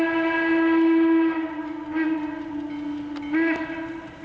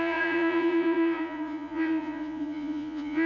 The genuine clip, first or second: first